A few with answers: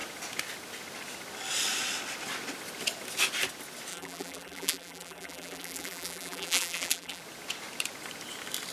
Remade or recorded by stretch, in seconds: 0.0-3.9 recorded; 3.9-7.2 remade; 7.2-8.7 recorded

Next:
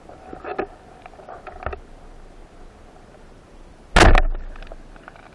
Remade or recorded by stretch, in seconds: 0.0-5.3 recorded